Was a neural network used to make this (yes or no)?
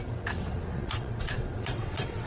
yes